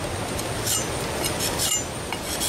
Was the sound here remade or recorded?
recorded